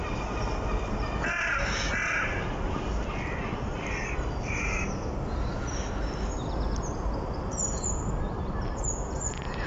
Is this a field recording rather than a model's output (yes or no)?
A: yes